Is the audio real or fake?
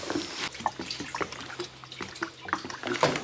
real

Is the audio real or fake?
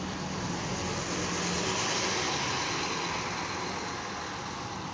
real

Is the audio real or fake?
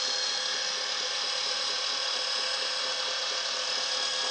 real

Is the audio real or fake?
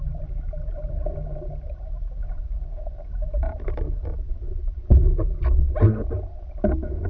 real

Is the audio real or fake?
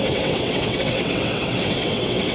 fake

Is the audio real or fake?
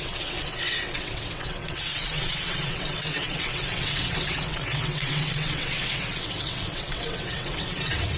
fake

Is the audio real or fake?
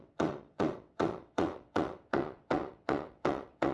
fake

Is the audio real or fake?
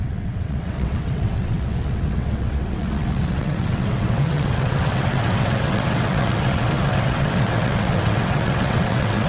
fake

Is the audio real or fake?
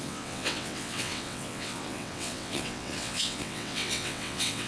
fake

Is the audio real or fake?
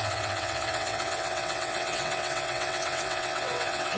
fake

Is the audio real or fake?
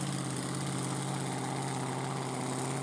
real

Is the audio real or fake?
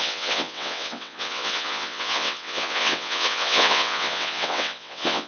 fake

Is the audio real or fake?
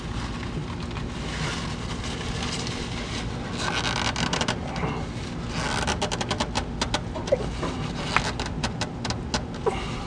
real